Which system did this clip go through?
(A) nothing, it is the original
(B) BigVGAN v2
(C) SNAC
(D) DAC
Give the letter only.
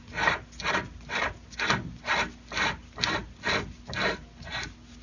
A